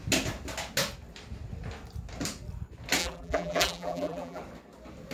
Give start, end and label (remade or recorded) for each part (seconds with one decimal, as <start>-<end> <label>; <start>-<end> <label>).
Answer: 0.0-3.0 recorded; 3.0-4.4 remade; 4.4-5.1 recorded